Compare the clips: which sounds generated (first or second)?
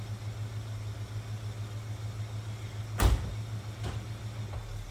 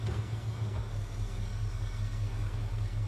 second